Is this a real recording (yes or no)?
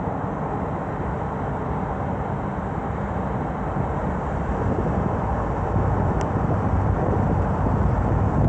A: yes